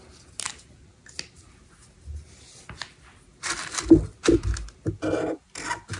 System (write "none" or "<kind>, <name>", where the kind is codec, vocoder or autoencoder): none